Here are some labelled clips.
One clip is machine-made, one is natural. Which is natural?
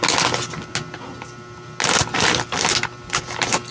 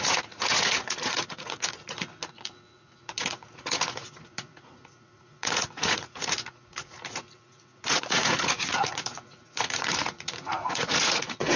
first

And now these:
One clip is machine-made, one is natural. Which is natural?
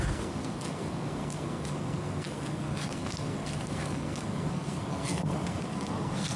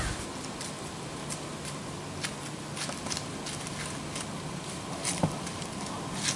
second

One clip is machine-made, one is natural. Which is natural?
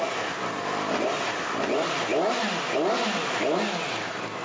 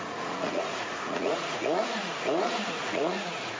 first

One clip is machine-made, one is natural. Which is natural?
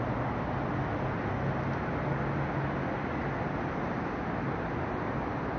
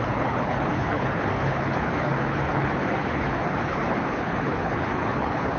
first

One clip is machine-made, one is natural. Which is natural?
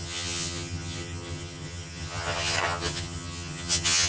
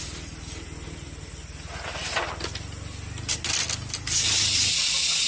second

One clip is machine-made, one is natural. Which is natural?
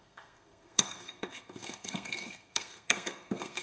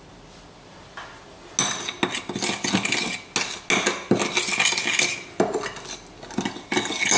second